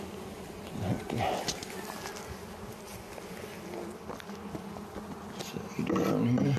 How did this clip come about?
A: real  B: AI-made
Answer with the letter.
A